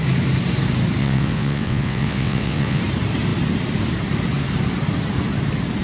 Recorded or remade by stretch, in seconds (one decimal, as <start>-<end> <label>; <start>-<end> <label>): 0.0-1.0 recorded; 1.0-2.8 remade; 2.8-5.8 recorded